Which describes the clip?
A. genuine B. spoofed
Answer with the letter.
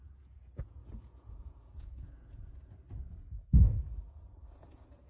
B